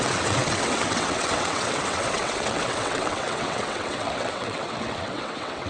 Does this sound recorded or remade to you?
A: remade